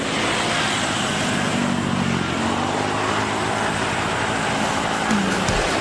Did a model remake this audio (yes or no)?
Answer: no